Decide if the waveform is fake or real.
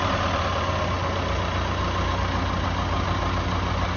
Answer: real